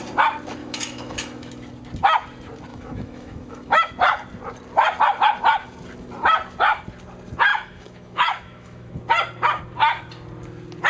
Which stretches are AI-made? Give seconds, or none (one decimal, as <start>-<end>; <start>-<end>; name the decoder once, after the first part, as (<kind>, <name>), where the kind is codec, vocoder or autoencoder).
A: 0.6-1.5 (autoencoder, DAC-VAE); 2.7-3.9; 7.5-9.0

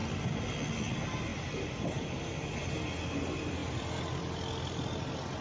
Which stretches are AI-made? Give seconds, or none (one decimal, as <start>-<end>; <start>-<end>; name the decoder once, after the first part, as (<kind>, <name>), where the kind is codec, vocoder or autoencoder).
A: none

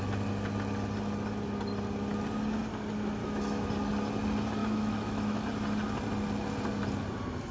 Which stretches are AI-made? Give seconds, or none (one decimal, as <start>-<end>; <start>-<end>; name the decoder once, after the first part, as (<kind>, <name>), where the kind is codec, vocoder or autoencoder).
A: 3.2-3.7 (autoencoder, DAC-VAE); 4.6-5.4